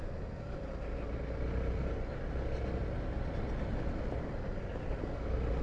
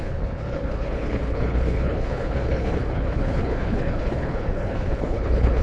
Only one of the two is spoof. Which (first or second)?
second